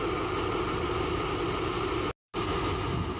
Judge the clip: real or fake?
real